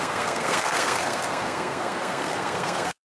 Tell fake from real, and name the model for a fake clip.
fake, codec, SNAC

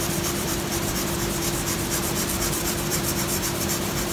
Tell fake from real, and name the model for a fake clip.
fake, vocoder, BigVGAN v2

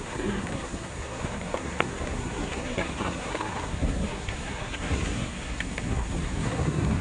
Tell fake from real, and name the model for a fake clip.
fake, codec, SNAC